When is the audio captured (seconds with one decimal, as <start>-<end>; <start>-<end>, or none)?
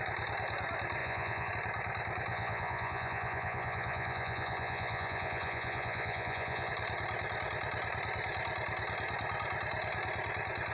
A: 0.0-1.0; 1.5-2.3; 6.7-10.7